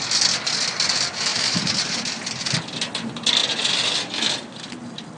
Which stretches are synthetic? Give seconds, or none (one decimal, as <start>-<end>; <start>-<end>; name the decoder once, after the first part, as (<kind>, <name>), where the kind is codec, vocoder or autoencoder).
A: 1.3-2.4 (vocoder, BigVGAN v2)